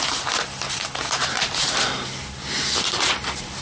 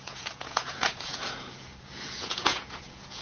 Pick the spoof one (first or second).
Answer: second